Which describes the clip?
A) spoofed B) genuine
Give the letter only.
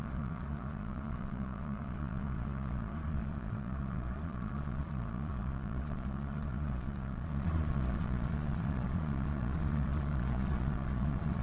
A